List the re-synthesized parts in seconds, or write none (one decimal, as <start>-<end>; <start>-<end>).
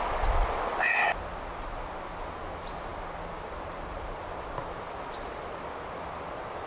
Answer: none